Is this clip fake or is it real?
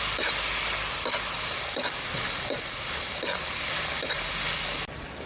real